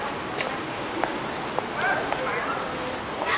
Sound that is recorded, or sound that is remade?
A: recorded